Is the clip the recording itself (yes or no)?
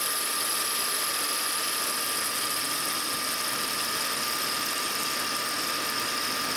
yes